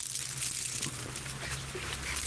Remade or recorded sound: recorded